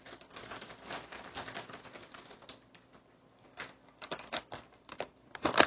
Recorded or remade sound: recorded